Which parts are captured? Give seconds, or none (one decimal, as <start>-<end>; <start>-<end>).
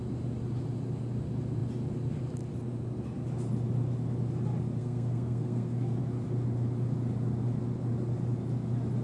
0.0-4.8; 6.0-9.0